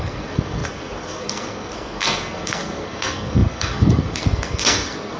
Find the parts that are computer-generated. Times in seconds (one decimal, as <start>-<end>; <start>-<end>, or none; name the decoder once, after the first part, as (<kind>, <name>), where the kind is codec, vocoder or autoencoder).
0.0-5.2 (codec, SNAC)